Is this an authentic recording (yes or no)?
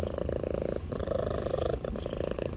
yes